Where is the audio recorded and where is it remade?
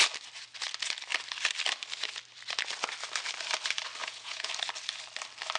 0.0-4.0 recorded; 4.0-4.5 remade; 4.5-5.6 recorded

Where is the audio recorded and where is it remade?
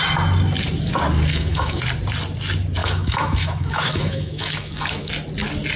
0.0-1.3 recorded; 1.3-1.8 remade; 1.8-2.8 recorded; 2.8-5.1 remade; 5.1-5.8 recorded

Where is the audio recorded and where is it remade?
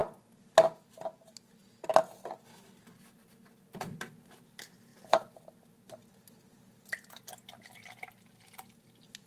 0.0-9.3 recorded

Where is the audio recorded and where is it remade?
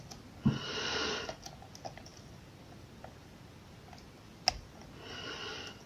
0.0-5.9 recorded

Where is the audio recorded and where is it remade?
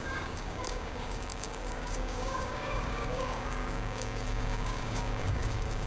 0.0-5.9 remade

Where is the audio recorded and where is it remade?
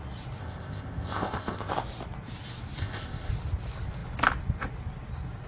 0.0-0.4 recorded; 0.4-1.7 remade; 1.7-2.8 recorded; 2.8-3.3 remade; 3.3-5.5 recorded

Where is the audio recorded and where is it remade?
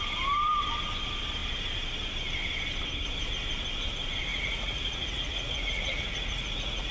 0.0-4.3 recorded; 4.3-6.9 remade